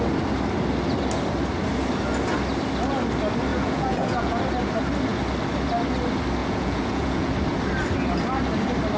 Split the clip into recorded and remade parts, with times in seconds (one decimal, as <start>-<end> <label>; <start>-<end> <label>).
0.0-3.5 recorded; 3.5-4.4 remade; 4.4-6.4 recorded; 6.4-7.3 remade; 7.3-9.0 recorded